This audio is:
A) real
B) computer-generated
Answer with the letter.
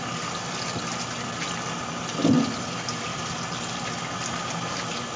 A